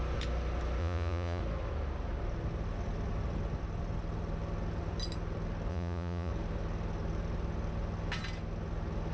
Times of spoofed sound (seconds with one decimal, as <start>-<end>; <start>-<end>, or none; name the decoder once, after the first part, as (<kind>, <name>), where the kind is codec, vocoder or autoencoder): 0.8-1.4 (vocoder, Vocos); 5.7-6.3